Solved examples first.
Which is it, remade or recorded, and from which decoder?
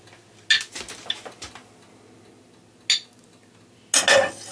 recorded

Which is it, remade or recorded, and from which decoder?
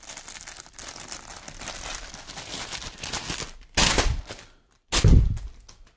recorded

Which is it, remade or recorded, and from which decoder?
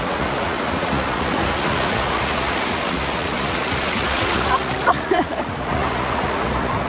remade, vocoder, Vocos